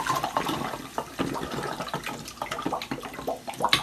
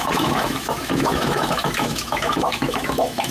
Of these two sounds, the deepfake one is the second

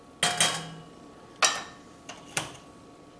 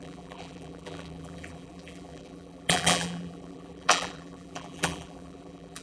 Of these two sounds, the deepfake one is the second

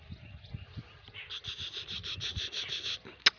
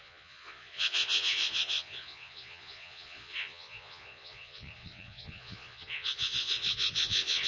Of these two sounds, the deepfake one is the second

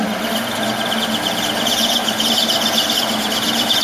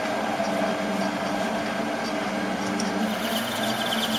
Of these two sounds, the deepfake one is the first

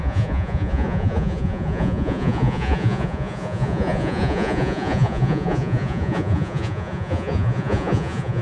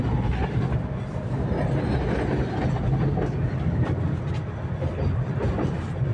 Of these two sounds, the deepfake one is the first